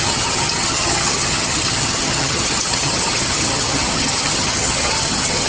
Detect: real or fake fake